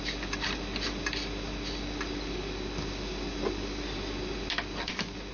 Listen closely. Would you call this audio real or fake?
real